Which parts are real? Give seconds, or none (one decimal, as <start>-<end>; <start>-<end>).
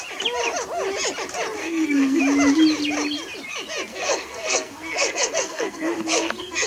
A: 0.0-1.6; 2.2-3.9